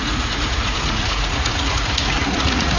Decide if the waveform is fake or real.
fake